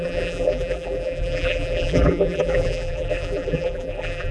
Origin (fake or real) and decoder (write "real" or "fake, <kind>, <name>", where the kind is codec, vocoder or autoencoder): fake, vocoder, BigVGAN v2